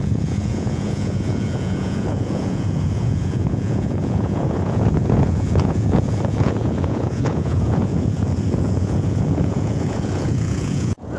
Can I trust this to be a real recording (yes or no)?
no